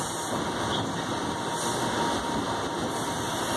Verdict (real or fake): real